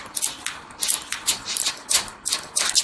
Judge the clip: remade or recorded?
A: recorded